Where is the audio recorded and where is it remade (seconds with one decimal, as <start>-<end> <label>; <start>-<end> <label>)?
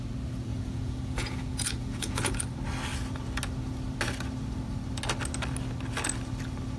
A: 0.0-0.5 recorded; 0.5-2.4 remade; 2.4-6.8 recorded